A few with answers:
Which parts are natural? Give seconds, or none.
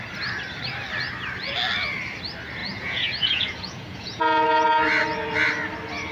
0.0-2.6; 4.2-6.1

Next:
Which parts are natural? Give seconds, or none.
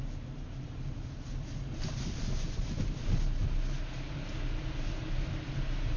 0.0-6.0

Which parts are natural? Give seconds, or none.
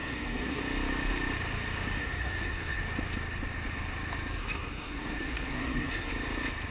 0.6-2.0; 2.8-4.4; 6.1-6.7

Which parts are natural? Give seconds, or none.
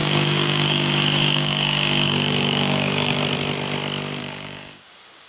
3.2-4.2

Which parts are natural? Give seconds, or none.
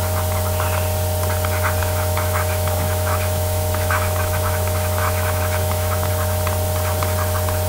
0.0-1.8; 6.1-7.7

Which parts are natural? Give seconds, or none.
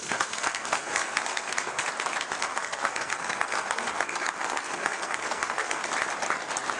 1.8-2.4; 5.8-6.8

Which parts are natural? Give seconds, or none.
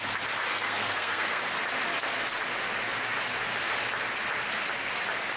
0.0-0.5; 1.4-5.4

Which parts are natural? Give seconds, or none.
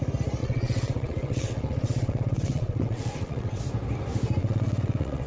0.0-0.4; 3.6-4.4